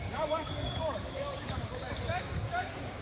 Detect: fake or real fake